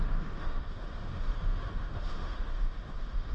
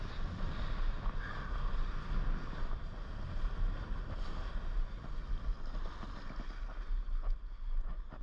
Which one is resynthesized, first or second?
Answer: first